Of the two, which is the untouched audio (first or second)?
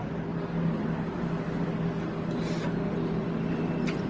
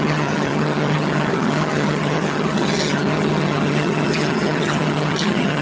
first